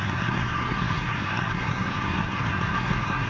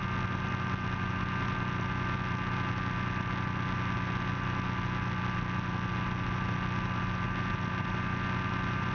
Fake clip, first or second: first